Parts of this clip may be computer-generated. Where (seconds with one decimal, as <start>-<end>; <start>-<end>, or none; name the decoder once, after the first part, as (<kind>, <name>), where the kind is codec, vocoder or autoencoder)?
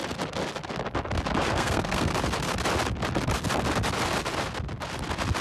1.5-2.1 (codec, SNAC)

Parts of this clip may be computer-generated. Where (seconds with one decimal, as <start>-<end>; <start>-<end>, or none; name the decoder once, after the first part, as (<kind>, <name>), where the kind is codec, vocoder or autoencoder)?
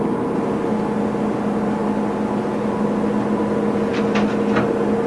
none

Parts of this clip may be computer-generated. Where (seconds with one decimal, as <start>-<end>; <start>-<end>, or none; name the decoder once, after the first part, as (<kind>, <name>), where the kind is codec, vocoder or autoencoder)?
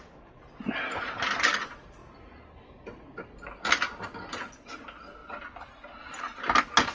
none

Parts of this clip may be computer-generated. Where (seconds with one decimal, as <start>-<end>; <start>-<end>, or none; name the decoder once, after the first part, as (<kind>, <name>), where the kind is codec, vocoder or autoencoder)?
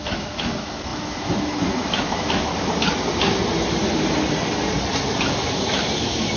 0.0-2.5 (autoencoder, DAC-VAE); 6.0-6.4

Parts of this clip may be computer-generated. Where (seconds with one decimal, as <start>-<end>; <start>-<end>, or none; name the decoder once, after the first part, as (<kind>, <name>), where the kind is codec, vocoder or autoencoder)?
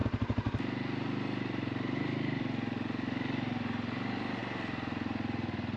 none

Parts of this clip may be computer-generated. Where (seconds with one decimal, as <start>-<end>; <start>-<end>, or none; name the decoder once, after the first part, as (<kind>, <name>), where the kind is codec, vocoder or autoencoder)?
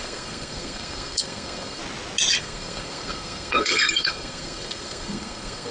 0.0-1.8 (codec, SNAC); 2.4-5.7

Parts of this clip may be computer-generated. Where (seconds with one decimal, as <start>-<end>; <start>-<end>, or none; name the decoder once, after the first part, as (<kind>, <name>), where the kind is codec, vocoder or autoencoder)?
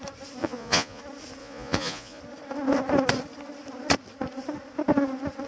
0.4-1.0 (vocoder, Vocos); 1.4-2.2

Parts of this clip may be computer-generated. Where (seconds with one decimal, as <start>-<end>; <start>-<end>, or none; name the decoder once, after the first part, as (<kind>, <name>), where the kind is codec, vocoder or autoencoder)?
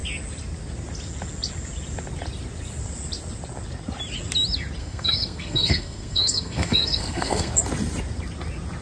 4.8-7.5 (codec, SNAC)